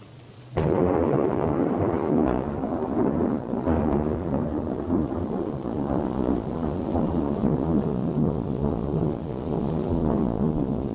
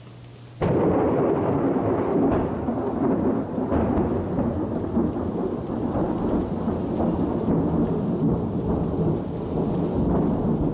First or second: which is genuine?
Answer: second